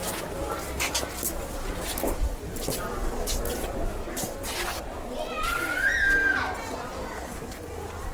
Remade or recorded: recorded